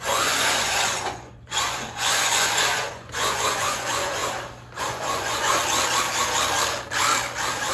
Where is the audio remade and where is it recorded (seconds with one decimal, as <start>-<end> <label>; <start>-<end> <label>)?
0.0-4.2 remade; 4.2-4.8 recorded; 4.8-5.6 remade; 5.6-7.7 recorded